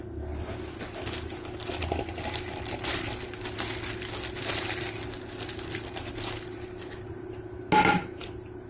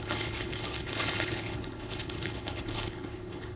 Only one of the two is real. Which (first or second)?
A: first